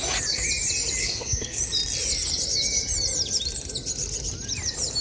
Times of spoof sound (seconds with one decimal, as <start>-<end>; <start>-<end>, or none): 1.0-1.6